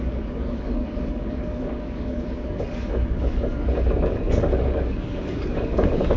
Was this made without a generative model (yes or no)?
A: no